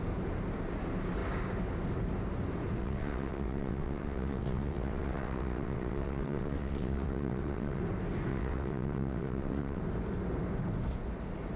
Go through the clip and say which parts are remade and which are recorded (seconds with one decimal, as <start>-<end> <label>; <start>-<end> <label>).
0.0-2.8 recorded; 2.8-7.8 remade; 7.8-8.3 recorded; 8.3-9.8 remade; 9.8-11.6 recorded